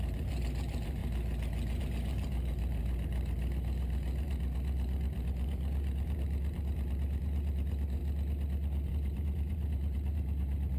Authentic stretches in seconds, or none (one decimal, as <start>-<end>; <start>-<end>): 1.0-1.8; 8.0-8.9